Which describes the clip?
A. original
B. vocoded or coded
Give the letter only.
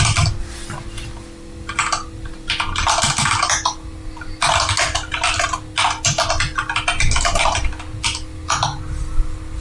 A